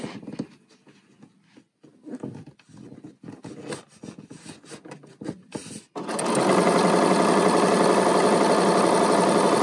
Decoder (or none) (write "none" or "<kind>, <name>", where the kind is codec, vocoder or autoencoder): none